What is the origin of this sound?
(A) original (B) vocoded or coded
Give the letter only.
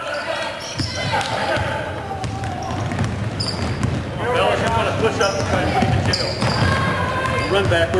A